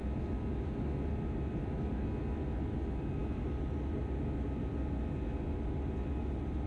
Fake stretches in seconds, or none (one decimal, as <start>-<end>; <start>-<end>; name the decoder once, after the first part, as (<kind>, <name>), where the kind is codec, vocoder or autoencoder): none